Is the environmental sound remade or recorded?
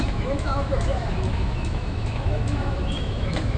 remade